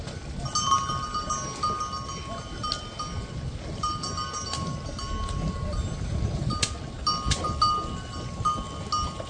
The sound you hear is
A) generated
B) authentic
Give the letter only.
B